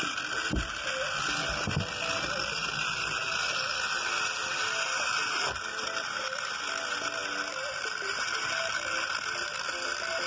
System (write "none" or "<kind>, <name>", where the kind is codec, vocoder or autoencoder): none